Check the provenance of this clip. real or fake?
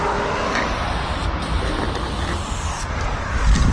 real